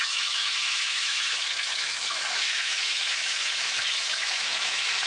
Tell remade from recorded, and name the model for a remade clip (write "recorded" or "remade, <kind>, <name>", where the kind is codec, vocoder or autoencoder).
remade, autoencoder, DAC-VAE